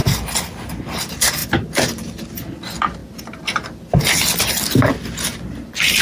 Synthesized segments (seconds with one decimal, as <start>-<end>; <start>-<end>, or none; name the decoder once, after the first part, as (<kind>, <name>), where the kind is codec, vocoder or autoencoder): none